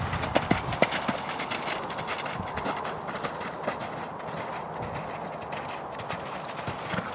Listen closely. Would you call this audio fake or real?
real